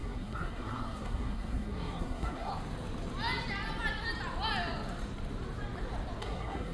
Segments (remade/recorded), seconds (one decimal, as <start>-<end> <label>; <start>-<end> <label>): 0.0-2.5 remade; 2.5-6.2 recorded; 6.2-6.7 remade